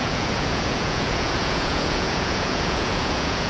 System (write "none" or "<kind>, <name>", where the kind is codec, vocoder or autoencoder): vocoder, Vocos